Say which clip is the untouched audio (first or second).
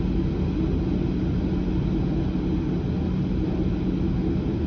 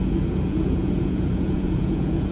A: first